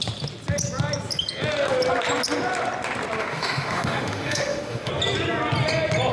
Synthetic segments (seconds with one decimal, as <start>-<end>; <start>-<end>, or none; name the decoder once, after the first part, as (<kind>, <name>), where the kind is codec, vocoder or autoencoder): 3.2-4.9 (autoencoder, DAC-VAE)